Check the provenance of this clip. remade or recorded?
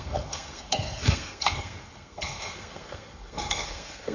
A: remade